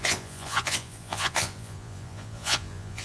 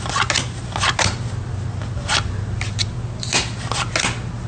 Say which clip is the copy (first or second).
first